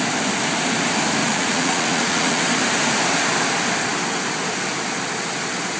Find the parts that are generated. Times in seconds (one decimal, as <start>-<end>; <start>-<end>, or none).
1.2-2.4